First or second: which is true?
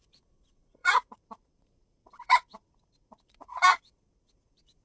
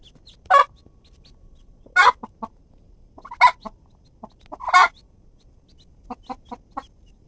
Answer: second